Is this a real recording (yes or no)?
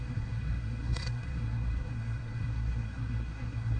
no